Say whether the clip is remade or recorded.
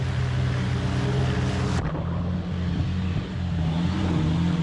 recorded